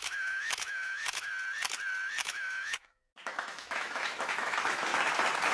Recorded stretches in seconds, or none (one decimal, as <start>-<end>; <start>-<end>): 1.3-2.2; 4.9-5.5